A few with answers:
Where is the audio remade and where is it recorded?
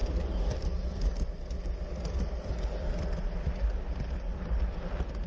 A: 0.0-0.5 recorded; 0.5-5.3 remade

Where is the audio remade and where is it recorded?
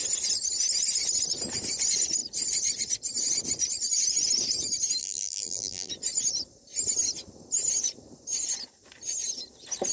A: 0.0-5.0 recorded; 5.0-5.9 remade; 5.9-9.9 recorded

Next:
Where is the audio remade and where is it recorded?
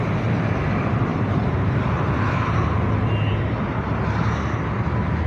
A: 0.0-1.1 recorded; 1.1-2.3 remade; 2.3-5.3 recorded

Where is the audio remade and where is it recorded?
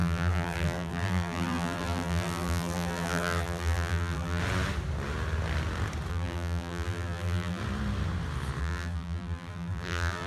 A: 0.0-4.4 remade; 4.4-6.1 recorded; 6.1-7.6 remade; 7.6-8.6 recorded; 8.6-10.3 remade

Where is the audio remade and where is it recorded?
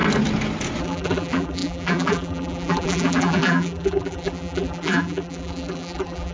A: 0.0-0.8 recorded; 0.8-6.3 remade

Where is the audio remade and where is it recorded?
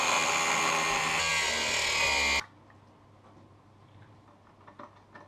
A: 0.0-5.3 recorded